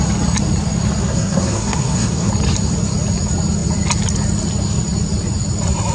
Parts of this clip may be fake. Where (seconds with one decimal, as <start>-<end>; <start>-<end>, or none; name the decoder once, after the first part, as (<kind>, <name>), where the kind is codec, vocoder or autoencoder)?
1.0-2.3 (codec, SNAC)